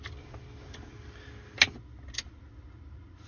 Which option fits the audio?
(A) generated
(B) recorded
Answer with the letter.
B